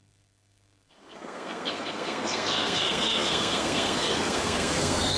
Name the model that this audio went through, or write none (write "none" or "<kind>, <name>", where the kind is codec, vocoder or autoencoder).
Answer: codec, SNAC